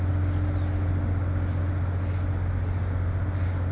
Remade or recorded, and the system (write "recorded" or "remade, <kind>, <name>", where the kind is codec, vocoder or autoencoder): recorded